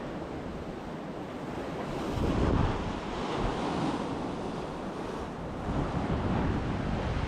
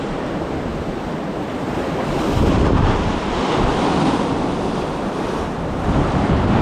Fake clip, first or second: second